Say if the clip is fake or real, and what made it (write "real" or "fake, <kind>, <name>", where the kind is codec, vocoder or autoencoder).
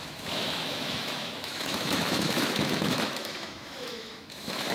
fake, autoencoder, DAC-VAE